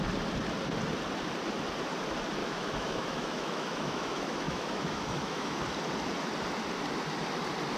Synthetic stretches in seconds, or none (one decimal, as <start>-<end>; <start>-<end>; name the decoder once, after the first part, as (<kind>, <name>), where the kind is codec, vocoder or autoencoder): 2.4-5.6 (autoencoder, DAC-VAE)